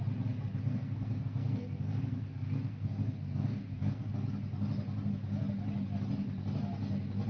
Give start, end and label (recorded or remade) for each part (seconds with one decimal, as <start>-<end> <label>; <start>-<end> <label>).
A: 0.0-0.6 recorded; 0.6-4.1 remade; 4.1-7.3 recorded